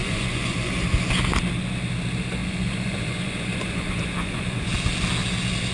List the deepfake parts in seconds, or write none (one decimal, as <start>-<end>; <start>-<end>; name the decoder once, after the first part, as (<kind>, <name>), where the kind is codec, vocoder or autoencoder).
0.0-0.7 (vocoder, Vocos); 2.4-4.7